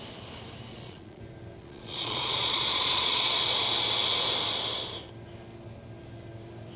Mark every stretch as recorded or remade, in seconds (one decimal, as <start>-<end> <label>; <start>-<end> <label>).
0.0-0.7 recorded; 0.7-1.2 remade; 1.2-1.6 recorded; 1.6-3.6 remade; 3.6-6.8 recorded